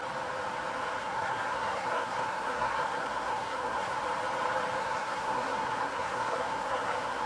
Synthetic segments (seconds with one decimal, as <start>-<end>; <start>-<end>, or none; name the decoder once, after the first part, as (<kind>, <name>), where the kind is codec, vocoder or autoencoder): 1.0-4.0 (codec, SNAC); 4.8-7.3